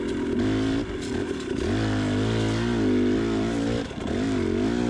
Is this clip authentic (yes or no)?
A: yes